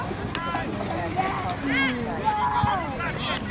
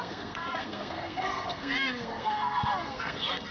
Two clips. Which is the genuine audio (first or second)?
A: first